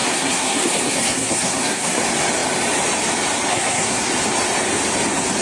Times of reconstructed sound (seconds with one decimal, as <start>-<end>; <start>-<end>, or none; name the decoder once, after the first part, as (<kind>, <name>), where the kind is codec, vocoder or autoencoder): 0.0-2.0 (codec, SNAC); 3.5-4.1